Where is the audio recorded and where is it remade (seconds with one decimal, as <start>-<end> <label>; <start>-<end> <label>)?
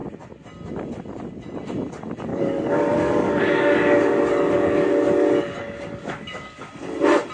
0.0-2.3 recorded; 2.3-6.7 remade; 6.7-7.3 recorded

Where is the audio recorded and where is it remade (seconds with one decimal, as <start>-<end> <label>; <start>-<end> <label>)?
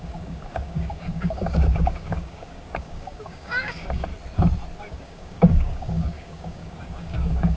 0.0-4.1 remade; 4.1-4.8 recorded; 4.8-7.6 remade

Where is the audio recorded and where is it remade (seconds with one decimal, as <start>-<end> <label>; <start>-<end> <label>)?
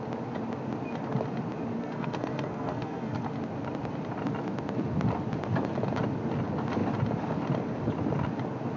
0.0-1.8 recorded; 1.8-3.2 remade; 3.2-8.8 recorded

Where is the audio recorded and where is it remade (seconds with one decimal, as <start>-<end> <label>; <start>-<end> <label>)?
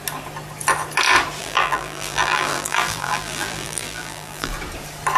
0.0-1.4 recorded; 1.4-4.5 remade; 4.5-5.2 recorded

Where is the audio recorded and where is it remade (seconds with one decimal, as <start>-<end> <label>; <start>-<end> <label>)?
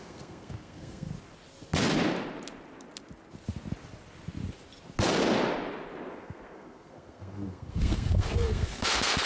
0.0-1.1 remade; 1.1-6.2 recorded; 6.2-9.3 remade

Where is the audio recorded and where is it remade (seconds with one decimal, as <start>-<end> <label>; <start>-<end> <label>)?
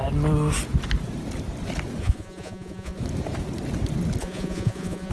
0.0-2.0 recorded; 2.0-3.0 remade; 3.0-4.2 recorded; 4.2-5.1 remade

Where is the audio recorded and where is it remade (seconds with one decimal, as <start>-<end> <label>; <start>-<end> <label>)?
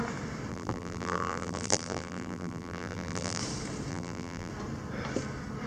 0.0-0.5 recorded; 0.5-3.4 remade; 3.4-3.9 recorded; 3.9-4.5 remade; 4.5-5.7 recorded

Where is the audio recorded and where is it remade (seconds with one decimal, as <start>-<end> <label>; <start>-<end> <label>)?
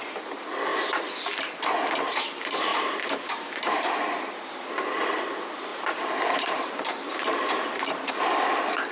0.0-2.7 recorded; 2.7-3.8 remade; 3.8-5.7 recorded; 5.7-8.1 remade; 8.1-8.9 recorded